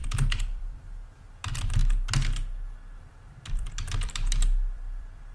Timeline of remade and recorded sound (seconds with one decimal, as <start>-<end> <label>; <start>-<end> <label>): 0.0-1.8 remade; 1.8-3.0 recorded; 3.0-5.3 remade

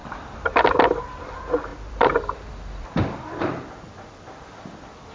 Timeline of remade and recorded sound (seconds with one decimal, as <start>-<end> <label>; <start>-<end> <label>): 0.0-1.7 recorded; 1.7-5.1 remade

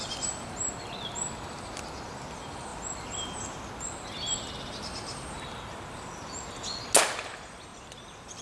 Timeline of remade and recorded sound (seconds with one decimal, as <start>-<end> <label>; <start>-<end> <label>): 0.0-8.4 recorded

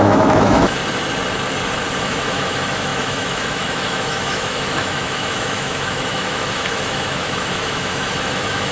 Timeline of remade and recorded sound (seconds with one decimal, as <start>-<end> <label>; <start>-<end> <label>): 0.0-0.8 remade; 0.8-2.0 recorded; 2.0-8.7 remade

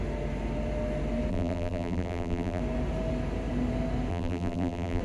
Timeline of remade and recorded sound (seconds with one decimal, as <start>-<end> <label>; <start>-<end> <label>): 0.0-1.3 recorded; 1.3-2.6 remade; 2.6-4.1 recorded; 4.1-5.0 remade

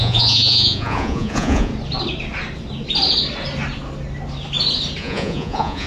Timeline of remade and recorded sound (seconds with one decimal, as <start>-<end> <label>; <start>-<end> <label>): 0.0-1.7 remade; 1.7-5.0 recorded; 5.0-5.9 remade

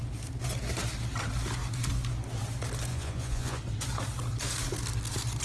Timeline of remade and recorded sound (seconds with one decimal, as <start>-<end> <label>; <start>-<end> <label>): 0.0-2.9 recorded; 2.9-3.6 remade; 3.6-5.4 recorded

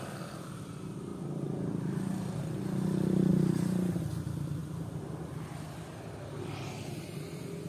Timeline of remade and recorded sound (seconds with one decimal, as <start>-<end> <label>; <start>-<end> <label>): 0.0-3.3 recorded; 3.3-4.0 remade; 4.0-7.7 recorded